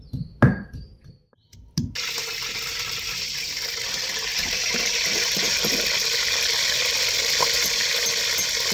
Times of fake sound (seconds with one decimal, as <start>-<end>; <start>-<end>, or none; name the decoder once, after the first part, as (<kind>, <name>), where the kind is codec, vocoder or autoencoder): 2.7-3.5 (vocoder, BigVGAN v2); 4.3-5.6